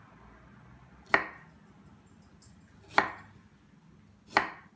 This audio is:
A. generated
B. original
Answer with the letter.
B